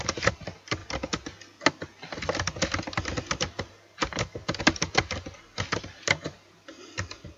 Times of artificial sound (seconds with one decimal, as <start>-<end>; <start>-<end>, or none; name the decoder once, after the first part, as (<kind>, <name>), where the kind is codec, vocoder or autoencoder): 0.0-0.8 (vocoder, BigVGAN v2); 3.4-4.4; 5.8-7.4